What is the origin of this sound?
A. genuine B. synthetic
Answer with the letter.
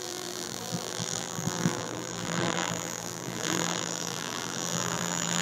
B